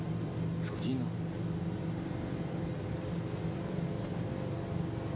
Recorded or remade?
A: recorded